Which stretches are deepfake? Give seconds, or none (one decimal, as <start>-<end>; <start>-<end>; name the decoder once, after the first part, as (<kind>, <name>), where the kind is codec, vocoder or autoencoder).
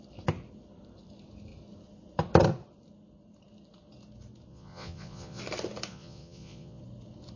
4.5-5.4 (vocoder, Vocos); 5.9-6.8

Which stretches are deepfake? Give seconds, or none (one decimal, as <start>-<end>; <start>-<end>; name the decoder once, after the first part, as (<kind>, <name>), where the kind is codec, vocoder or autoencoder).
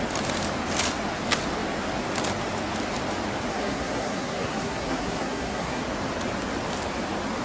3.5-5.8 (codec, SNAC)